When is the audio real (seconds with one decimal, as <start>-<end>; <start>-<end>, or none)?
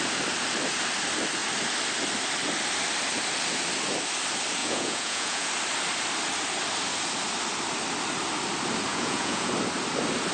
0.0-4.6; 5.5-8.9; 9.5-10.3